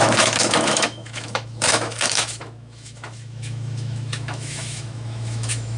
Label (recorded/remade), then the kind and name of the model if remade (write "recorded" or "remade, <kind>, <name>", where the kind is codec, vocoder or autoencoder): remade, autoencoder, DAC-VAE